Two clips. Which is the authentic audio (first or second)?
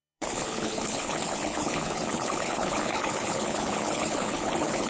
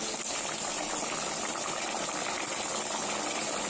second